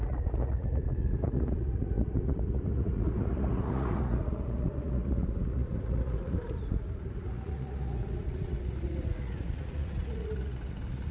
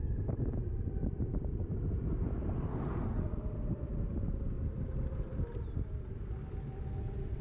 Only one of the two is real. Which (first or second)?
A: second